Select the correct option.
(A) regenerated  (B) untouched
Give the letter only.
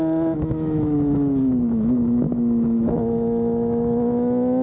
A